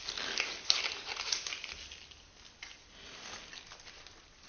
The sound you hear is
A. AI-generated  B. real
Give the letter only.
B